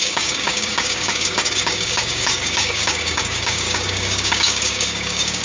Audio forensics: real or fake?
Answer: fake